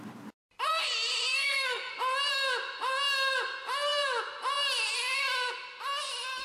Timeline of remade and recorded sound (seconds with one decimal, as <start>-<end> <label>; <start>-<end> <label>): 0.0-1.3 recorded; 1.3-1.9 remade; 1.9-6.4 recorded